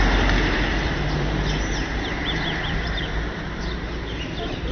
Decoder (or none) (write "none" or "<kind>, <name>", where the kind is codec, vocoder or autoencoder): vocoder, BigVGAN v2